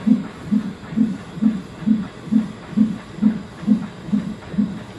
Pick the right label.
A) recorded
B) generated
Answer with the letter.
A